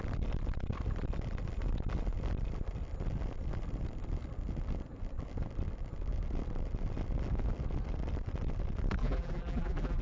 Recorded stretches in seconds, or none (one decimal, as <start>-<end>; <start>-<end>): 0.0-9.0